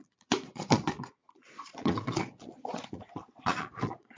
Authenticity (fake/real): fake